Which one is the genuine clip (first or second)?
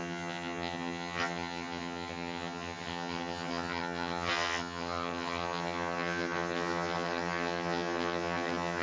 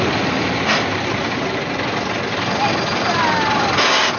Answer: second